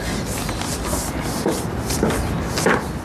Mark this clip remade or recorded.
recorded